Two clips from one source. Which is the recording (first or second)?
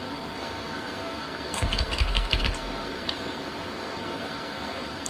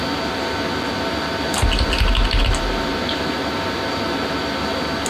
second